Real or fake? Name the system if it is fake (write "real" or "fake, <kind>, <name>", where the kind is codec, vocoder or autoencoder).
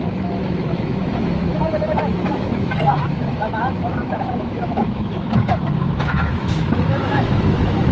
fake, autoencoder, DAC-VAE